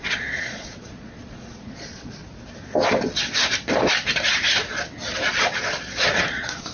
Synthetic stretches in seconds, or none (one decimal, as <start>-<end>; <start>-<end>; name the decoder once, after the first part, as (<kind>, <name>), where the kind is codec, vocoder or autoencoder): 0.0-2.2 (vocoder, Vocos); 6.2-6.7